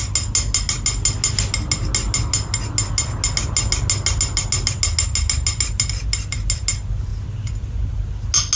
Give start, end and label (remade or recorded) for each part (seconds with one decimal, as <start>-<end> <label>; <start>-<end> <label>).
0.0-8.6 recorded